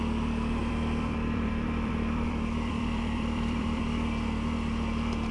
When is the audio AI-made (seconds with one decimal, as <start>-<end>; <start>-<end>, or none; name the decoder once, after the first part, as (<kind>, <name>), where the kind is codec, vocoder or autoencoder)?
0.6-3.8 (vocoder, BigVGAN v2)